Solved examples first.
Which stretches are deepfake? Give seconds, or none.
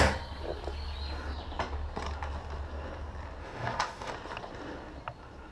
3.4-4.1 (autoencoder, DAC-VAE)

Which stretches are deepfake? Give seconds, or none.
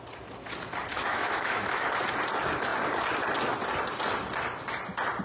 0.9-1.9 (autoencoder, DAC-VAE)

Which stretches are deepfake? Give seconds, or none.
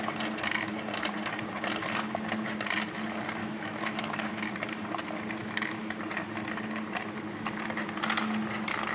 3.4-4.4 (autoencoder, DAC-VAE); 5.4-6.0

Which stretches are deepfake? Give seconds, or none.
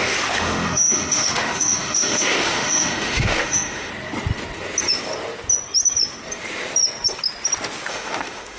0.0-3.9 (autoencoder, DAC-VAE); 7.9-8.6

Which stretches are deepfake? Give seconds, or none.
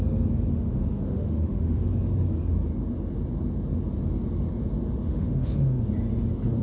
0.5-1.9 (autoencoder, DAC-VAE); 5.1-5.8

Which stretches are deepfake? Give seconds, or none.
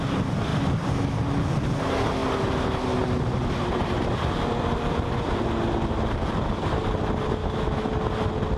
7.4-7.9 (autoencoder, DAC-VAE)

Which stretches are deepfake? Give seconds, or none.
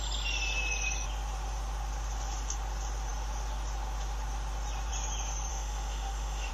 5.5-6.5 (autoencoder, DAC-VAE)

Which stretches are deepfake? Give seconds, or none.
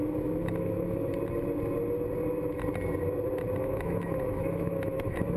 0.0-1.1 (autoencoder, DAC-VAE); 3.6-5.4